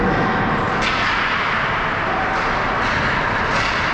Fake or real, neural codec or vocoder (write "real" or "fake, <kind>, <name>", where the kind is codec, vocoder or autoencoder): real